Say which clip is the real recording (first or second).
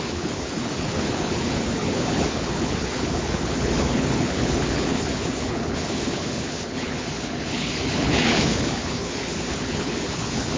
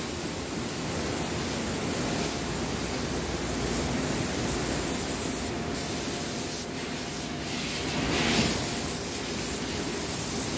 second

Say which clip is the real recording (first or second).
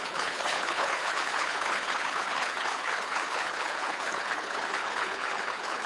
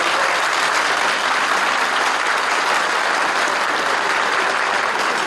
second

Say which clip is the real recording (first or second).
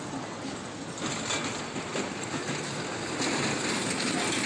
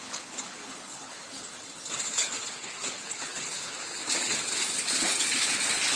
first